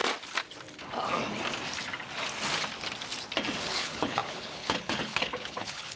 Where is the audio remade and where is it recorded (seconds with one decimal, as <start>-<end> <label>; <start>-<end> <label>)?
0.0-3.6 recorded; 3.6-6.0 remade